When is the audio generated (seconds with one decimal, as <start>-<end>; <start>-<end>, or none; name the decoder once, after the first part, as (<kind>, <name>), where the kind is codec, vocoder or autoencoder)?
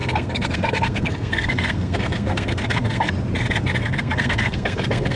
0.0-3.1 (codec, SNAC); 3.8-5.2